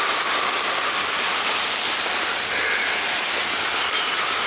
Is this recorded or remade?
recorded